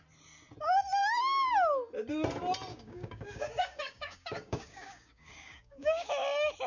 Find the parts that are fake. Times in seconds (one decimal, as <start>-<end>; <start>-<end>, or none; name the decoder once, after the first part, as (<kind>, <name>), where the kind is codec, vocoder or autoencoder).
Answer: 1.0-1.5 (codec, DAC); 2.7-6.1